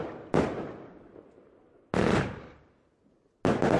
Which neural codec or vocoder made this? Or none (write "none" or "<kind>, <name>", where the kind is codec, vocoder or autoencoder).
none